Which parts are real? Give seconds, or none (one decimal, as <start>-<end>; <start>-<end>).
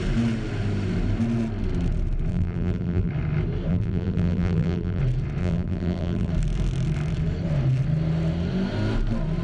0.0-2.3; 3.1-3.7; 5.0-5.4; 6.3-9.4